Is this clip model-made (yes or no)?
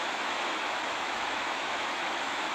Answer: yes